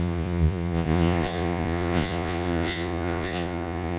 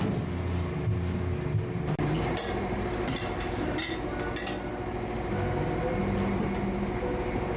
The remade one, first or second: first